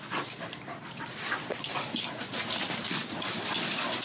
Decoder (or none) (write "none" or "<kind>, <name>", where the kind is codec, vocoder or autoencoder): vocoder, BigVGAN v2